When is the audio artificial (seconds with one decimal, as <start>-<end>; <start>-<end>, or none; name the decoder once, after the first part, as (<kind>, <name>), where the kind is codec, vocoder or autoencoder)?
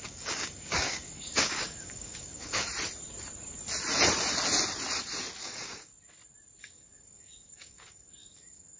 0.0-2.7 (codec, DAC); 5.4-5.9; 6.6-8.8